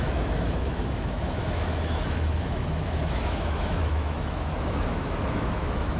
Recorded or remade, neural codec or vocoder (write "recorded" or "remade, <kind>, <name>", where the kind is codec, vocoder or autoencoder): remade, autoencoder, DAC-VAE